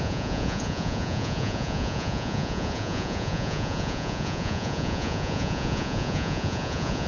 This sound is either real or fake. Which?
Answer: fake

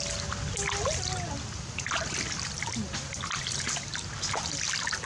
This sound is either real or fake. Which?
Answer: real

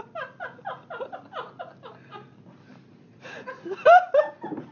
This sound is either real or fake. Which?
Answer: real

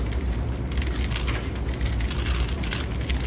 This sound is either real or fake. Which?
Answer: real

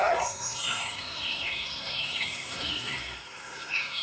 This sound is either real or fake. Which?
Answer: fake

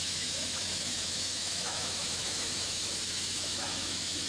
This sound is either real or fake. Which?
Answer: fake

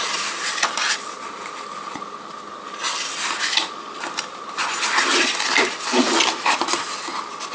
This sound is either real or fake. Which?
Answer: real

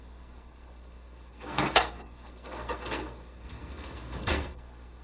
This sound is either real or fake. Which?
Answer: fake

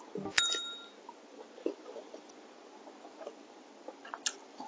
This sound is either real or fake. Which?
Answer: real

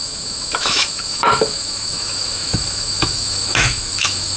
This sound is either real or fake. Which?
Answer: fake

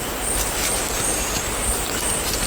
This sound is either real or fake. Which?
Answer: real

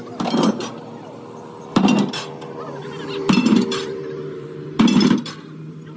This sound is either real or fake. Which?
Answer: real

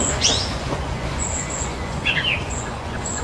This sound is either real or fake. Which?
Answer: fake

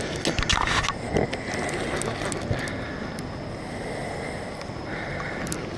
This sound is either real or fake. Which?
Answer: real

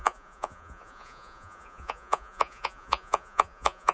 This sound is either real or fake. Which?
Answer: fake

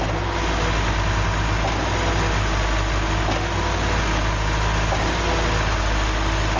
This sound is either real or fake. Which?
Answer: real